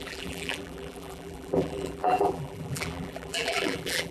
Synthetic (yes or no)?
yes